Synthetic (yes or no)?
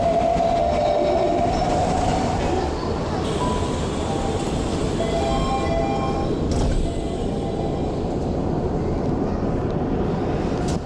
no